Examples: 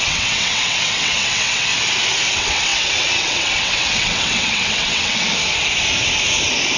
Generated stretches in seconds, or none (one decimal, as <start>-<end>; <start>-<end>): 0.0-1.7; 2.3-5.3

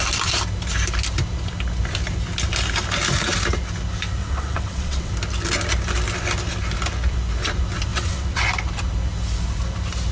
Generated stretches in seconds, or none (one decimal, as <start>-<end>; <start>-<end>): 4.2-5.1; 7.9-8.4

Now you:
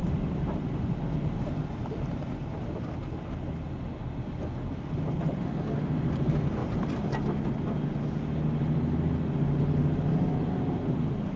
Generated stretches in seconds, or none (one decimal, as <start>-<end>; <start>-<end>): none

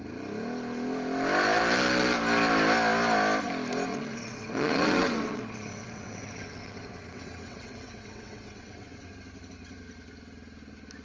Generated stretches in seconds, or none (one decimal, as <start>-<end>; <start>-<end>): 3.9-9.1

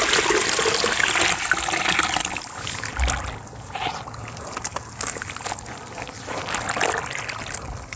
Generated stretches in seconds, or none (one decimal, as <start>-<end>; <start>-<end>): none

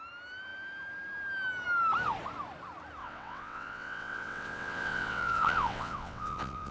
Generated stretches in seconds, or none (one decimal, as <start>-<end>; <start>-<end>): 3.0-6.7

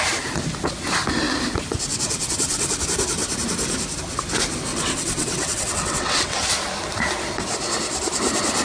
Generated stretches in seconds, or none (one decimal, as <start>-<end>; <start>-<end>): 1.9-2.8; 4.7-6.5